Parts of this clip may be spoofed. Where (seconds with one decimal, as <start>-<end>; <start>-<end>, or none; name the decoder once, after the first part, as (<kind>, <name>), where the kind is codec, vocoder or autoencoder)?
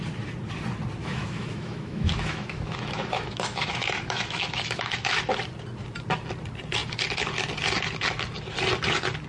1.0-5.2 (autoencoder, DAC-VAE)